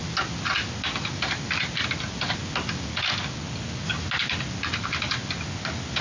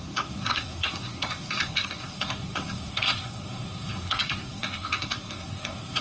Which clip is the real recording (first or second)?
first